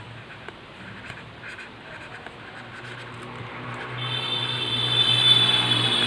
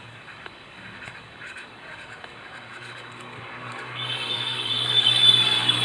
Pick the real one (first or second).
first